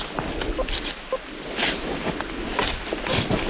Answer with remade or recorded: recorded